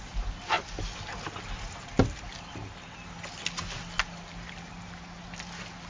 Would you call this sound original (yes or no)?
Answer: yes